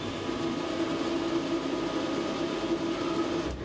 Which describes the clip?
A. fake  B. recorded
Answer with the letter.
B